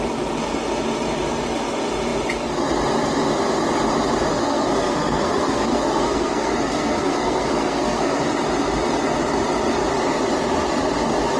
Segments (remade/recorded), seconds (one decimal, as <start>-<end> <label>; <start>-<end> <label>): 0.0-4.3 recorded; 4.3-8.2 remade; 8.2-11.4 recorded